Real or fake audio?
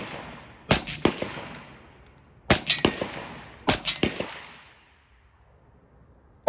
real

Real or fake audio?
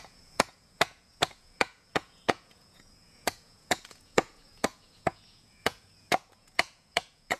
fake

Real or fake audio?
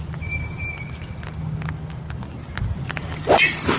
real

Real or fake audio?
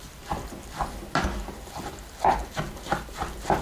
real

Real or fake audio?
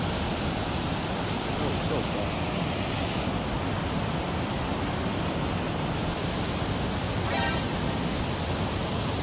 real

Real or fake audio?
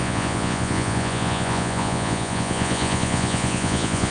fake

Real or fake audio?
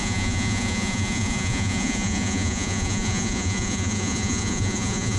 fake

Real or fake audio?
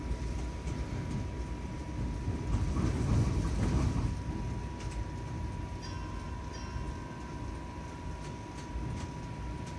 real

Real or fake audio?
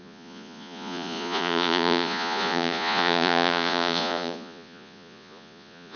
fake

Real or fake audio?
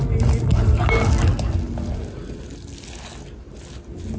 real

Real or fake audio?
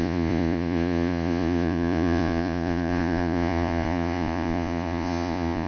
fake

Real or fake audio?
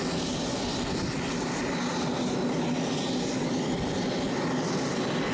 real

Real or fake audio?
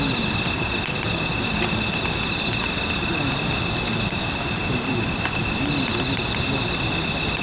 real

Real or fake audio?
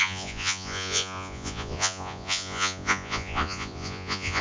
fake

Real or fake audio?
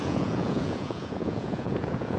fake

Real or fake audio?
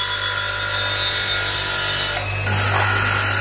real